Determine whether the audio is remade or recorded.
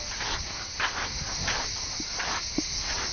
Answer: recorded